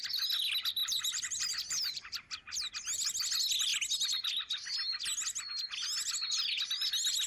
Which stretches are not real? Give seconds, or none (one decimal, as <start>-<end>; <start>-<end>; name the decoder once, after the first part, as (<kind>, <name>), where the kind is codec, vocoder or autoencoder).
0.8-2.7 (vocoder, BigVGAN v2)